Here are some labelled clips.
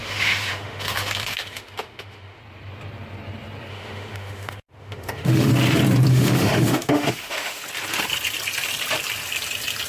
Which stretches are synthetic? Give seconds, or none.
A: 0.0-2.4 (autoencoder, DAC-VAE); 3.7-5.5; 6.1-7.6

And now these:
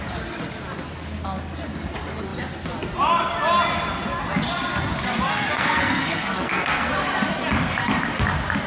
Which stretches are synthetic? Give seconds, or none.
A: 5.3-6.9 (codec, SNAC)

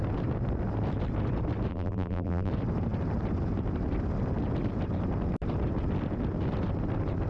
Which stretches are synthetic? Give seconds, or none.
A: 1.7-2.5 (vocoder, BigVGAN v2)

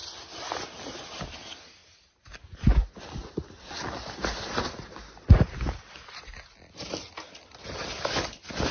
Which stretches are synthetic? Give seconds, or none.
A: none

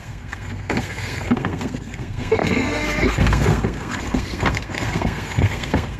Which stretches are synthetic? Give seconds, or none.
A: 0.0-6.0 (codec, SNAC)

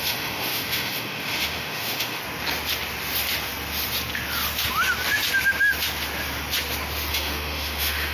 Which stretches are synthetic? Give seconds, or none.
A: 0.0-2.2 (autoencoder, DAC-VAE); 7.1-8.1